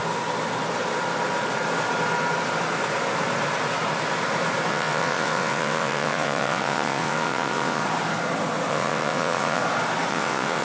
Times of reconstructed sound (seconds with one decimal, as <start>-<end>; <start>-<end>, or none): 4.7-7.8; 8.7-9.6; 10.1-10.6